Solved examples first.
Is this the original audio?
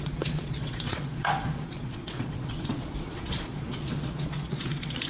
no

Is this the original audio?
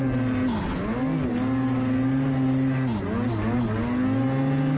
yes